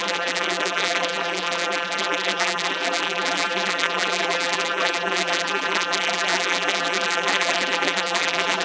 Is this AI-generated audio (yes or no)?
yes